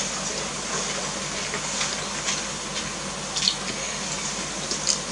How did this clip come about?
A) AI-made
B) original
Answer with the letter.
B